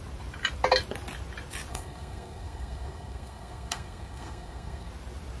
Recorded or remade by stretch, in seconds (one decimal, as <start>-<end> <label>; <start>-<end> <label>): 0.0-1.7 recorded; 1.7-4.9 remade; 4.9-5.4 recorded